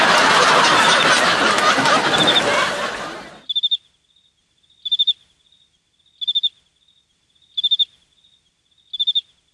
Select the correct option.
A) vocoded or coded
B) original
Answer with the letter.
B